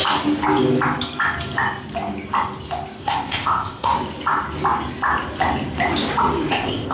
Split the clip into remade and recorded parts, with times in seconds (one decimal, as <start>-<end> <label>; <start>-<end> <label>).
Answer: 0.0-3.0 recorded; 3.0-3.9 remade; 3.9-6.5 recorded; 6.5-6.9 remade